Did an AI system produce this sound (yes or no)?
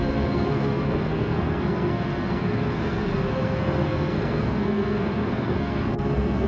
yes